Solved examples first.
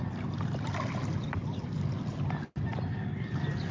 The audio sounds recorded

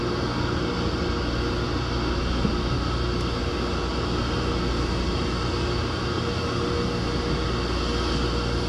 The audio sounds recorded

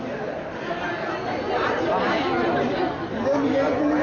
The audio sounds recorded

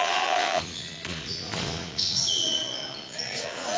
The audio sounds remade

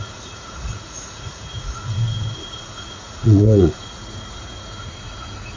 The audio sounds remade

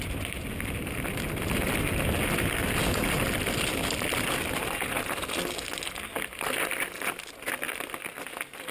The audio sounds recorded